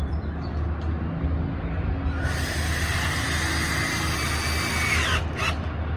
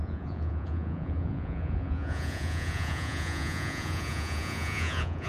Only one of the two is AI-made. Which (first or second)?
second